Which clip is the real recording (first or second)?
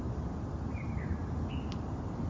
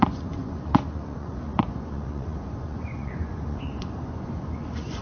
first